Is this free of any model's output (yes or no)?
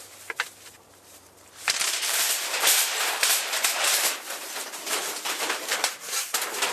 no